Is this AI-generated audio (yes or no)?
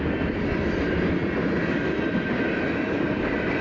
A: no